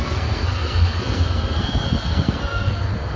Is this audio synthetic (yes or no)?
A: yes